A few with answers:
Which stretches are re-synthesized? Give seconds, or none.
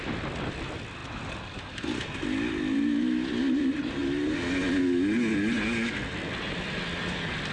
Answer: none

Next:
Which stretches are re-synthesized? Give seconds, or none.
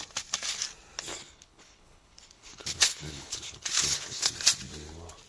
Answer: 1.1-4.3 (codec, HILCodec)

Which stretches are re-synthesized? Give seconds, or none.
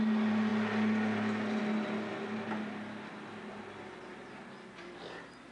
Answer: none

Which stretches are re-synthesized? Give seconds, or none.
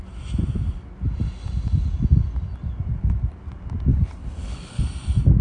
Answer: 3.9-4.8 (codec, HILCodec)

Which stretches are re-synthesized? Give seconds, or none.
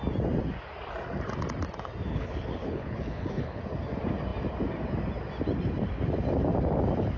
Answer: 2.1-3.6 (codec, HILCodec)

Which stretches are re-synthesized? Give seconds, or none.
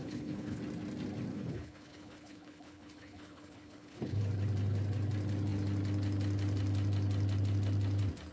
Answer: 0.0-0.6 (codec, HILCodec); 1.3-4.2